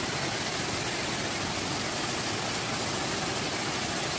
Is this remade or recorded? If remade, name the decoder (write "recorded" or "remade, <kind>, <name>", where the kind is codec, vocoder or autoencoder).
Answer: recorded